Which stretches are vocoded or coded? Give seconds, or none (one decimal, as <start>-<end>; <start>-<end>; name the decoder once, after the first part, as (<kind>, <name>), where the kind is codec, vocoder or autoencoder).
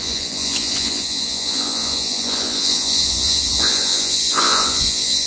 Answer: 0.0-5.3 (vocoder, Vocos)